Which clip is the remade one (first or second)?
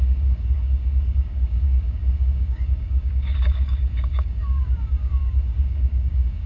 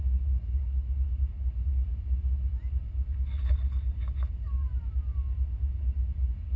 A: first